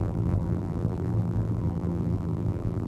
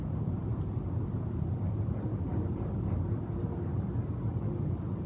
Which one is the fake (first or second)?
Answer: first